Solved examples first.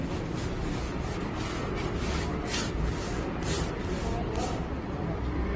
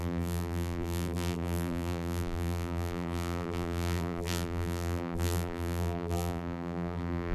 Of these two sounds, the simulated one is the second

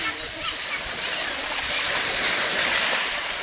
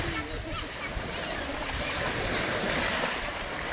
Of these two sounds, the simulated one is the first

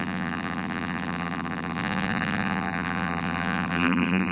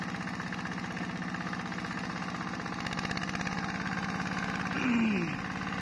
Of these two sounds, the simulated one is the first